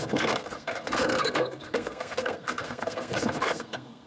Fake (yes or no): yes